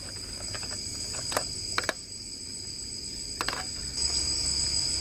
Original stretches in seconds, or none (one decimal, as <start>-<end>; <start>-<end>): 0.0-2.3; 2.9-5.0